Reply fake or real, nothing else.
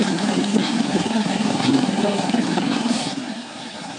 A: fake